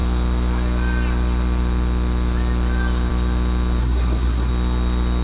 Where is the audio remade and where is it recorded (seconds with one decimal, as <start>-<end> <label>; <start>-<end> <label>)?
0.0-3.8 recorded; 3.8-4.5 remade; 4.5-5.2 recorded

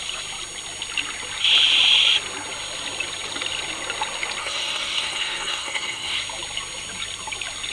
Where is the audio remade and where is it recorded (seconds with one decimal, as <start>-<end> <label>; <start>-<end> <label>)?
0.0-4.4 recorded; 4.4-6.2 remade; 6.2-7.7 recorded

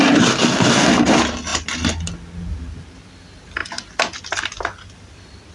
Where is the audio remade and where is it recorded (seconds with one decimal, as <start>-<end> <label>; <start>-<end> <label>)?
0.0-5.5 recorded

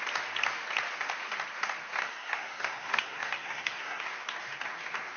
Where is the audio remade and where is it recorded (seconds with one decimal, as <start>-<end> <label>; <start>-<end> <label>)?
0.0-2.0 recorded; 2.0-4.0 remade; 4.0-5.2 recorded

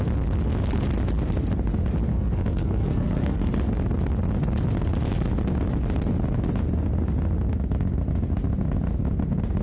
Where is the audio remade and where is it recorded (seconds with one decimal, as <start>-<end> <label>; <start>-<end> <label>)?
0.0-2.1 recorded; 2.1-3.5 remade; 3.5-9.6 recorded

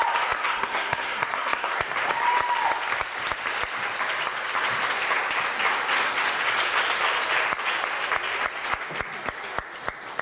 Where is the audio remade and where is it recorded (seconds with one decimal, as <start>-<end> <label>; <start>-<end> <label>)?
0.0-0.4 recorded; 0.4-1.8 remade; 1.8-10.2 recorded